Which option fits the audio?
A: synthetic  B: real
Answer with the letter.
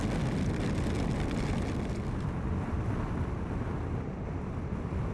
B